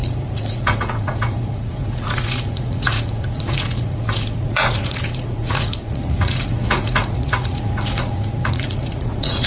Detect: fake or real fake